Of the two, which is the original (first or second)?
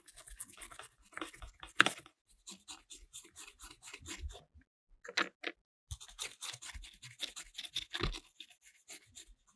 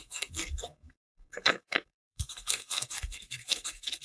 first